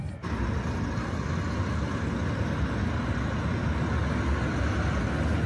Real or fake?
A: real